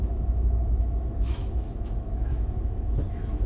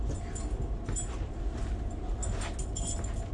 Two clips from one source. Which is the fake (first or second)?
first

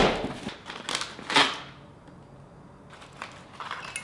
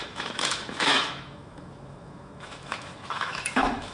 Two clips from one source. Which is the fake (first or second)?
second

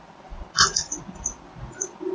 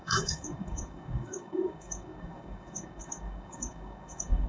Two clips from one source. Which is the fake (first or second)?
second